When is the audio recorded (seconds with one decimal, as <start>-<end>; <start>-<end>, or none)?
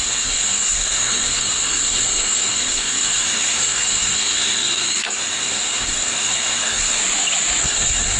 7.0-7.6